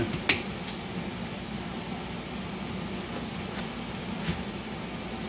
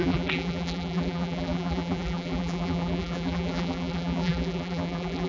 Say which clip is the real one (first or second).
first